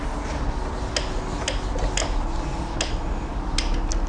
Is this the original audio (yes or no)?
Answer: yes